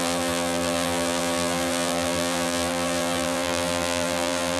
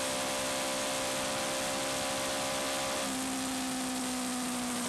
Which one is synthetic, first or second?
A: first